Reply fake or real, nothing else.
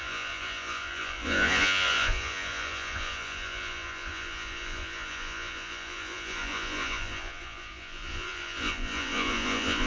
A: fake